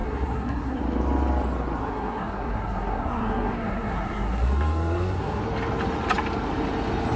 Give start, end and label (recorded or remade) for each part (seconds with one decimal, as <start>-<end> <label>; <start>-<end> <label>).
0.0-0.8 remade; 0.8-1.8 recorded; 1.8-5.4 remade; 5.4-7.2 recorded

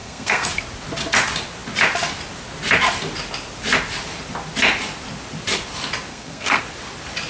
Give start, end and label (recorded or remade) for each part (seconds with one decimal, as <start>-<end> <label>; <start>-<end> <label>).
0.0-0.5 remade; 0.5-6.1 recorded; 6.1-6.6 remade; 6.6-7.3 recorded

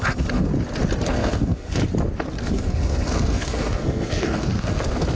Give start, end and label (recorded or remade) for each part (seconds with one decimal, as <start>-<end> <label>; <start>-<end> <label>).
0.0-0.5 remade; 0.5-1.1 recorded; 1.1-1.8 remade; 1.8-2.4 recorded; 2.4-5.2 remade

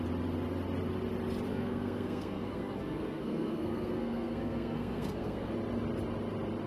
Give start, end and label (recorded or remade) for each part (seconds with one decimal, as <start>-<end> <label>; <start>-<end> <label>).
0.0-1.5 recorded; 1.5-5.5 remade; 5.5-6.7 recorded